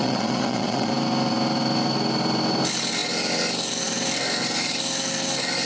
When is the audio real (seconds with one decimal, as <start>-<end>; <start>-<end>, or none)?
0.9-5.7